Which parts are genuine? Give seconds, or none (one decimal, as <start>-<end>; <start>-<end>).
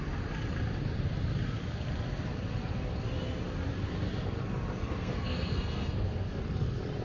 0.0-4.8; 6.4-7.0